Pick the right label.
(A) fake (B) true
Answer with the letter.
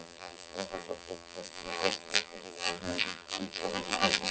A